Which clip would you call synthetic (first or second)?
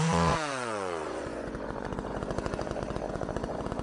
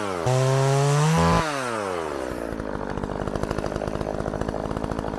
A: first